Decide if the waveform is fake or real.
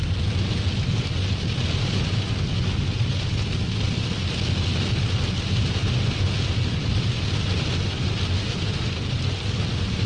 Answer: real